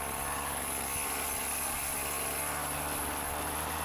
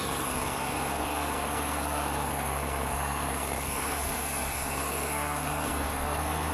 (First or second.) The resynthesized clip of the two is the second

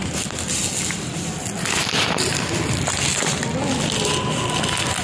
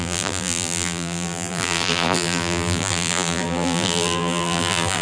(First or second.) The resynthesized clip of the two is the second